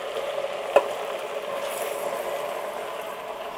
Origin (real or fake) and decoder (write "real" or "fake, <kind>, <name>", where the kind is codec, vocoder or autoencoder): real